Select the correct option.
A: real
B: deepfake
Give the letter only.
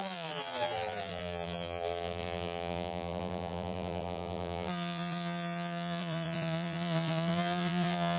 B